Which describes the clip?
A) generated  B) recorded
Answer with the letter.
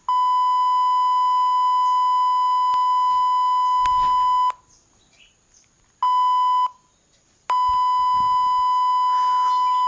B